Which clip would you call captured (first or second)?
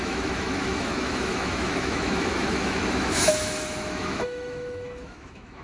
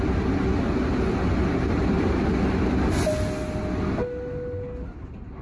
second